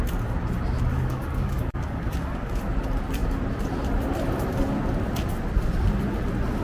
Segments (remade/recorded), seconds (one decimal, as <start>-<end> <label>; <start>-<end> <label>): 0.0-0.9 recorded; 0.9-2.6 remade; 2.6-6.6 recorded